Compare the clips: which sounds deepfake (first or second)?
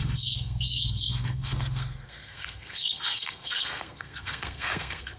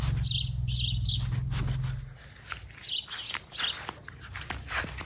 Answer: first